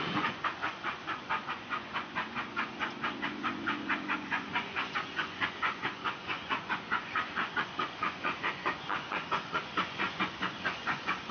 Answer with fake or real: fake